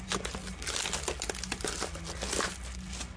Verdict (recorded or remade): recorded